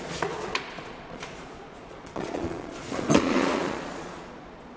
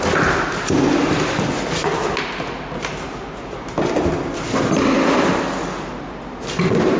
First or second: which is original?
second